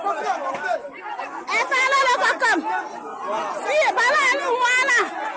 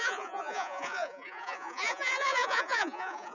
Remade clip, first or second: second